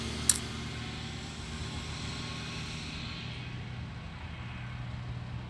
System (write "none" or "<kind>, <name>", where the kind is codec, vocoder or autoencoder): none